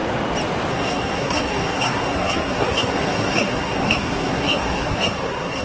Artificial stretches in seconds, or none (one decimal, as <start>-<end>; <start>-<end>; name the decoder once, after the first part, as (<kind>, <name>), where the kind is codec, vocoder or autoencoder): 0.7-5.6 (codec, SNAC)